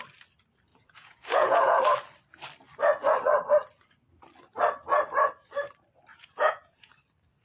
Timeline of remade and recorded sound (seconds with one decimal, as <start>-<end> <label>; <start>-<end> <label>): 0.0-0.7 recorded; 0.7-1.8 remade; 1.8-6.1 recorded; 6.1-6.9 remade; 6.9-7.4 recorded